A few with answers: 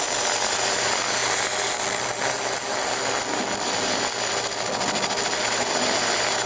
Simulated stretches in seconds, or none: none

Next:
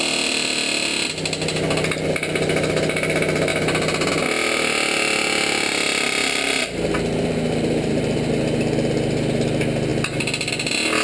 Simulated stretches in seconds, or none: 6.2-8.3 (vocoder, BigVGAN v2)

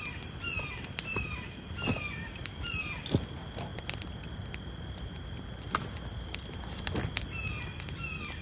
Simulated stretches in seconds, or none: none

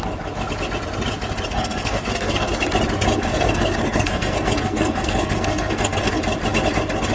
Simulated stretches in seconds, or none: 1.5-2.5 (codec, SNAC); 3.3-6.1

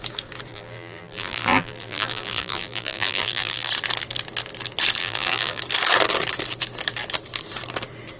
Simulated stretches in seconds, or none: 0.5-3.7 (vocoder, BigVGAN v2); 5.0-5.6

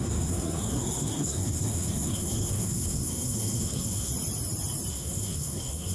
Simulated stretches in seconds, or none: 0.0-4.1 (codec, SNAC); 4.9-5.9